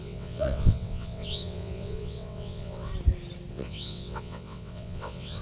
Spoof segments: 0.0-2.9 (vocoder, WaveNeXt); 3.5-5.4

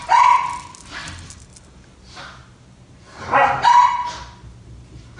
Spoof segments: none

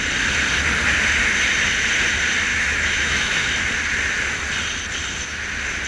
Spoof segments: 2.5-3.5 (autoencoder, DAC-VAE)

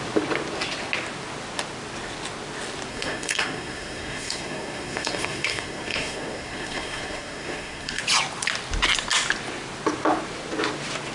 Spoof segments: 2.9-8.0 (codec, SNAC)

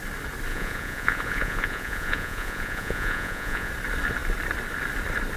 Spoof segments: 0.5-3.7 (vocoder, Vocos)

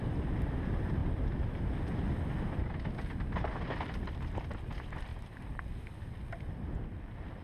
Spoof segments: 5.1-5.6 (vocoder, BigVGAN v2)